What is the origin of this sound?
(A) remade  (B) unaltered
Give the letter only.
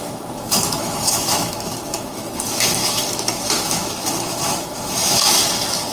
A